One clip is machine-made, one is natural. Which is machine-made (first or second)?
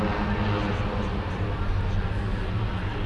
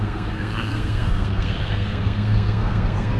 second